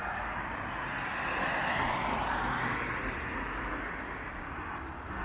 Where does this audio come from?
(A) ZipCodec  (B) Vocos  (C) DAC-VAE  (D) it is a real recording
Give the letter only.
D